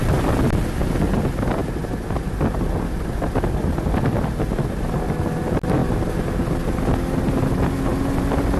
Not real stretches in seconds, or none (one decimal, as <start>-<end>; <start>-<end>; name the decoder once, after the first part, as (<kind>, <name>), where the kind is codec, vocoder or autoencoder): none